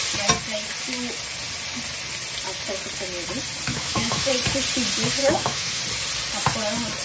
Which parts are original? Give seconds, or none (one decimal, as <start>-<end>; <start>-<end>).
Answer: 0.0-3.7; 4.3-5.2; 5.8-7.0